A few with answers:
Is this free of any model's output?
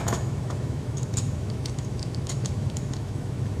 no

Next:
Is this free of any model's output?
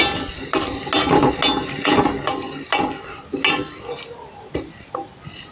yes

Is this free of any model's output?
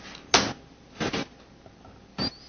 yes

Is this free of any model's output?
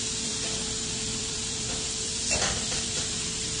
no